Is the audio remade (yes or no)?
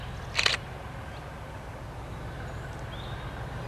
no